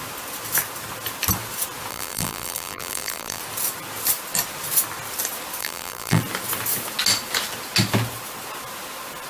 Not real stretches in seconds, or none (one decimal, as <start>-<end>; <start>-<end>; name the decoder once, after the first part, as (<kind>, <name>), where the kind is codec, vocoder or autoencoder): 1.9-3.4 (vocoder, BigVGAN v2); 5.6-6.2